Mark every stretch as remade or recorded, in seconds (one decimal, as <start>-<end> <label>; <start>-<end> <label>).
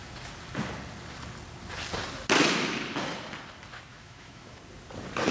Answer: 0.0-3.9 recorded; 3.9-4.6 remade; 4.6-5.3 recorded